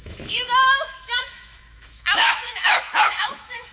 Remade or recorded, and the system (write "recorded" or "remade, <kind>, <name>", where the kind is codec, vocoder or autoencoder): remade, autoencoder, DAC-VAE